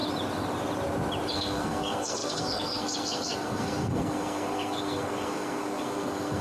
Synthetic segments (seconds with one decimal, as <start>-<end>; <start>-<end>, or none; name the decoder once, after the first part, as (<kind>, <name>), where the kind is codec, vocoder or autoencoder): 1.3-6.4 (codec, SNAC)